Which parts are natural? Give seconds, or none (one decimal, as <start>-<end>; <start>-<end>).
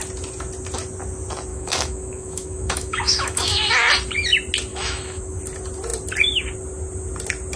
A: 0.0-1.5; 3.7-4.7; 5.4-7.6